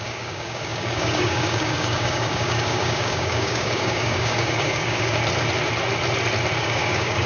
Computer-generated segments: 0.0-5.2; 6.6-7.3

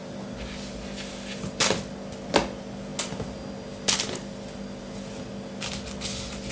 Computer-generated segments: none

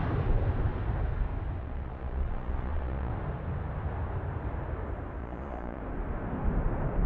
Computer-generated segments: 1.6-3.1; 5.2-5.8

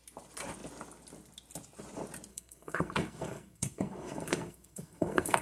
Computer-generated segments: 2.3-5.4

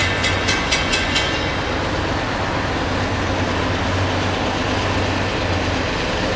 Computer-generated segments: 0.0-1.5